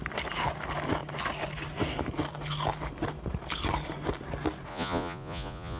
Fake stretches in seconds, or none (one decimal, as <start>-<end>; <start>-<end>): 4.7-5.8